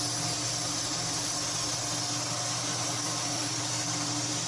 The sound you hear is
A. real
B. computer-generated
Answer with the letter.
A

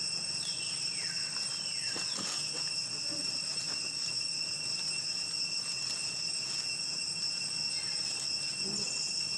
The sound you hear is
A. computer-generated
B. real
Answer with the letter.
B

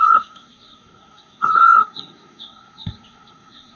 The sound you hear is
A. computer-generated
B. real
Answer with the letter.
A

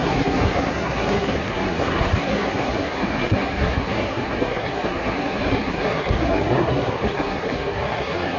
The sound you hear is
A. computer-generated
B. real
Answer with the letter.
A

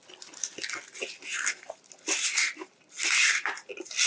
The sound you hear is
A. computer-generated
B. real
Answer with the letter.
B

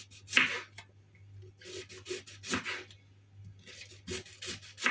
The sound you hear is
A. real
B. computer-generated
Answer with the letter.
A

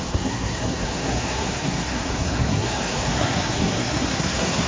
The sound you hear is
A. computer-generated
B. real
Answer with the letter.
A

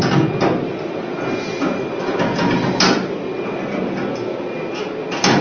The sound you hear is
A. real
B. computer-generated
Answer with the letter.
A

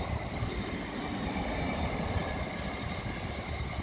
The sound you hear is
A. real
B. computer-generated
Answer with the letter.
A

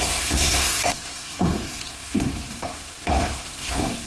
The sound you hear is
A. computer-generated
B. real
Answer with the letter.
A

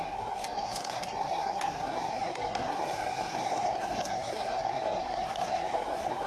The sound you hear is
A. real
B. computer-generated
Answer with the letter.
B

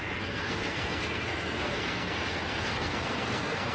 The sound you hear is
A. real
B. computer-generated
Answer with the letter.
B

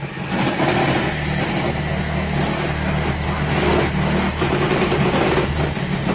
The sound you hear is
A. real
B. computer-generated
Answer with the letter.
A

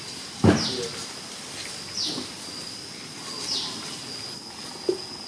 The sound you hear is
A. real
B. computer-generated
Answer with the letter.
A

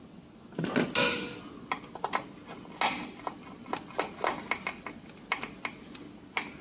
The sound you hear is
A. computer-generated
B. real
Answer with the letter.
B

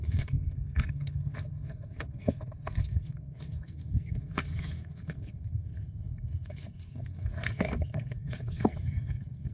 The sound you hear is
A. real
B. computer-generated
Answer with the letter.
B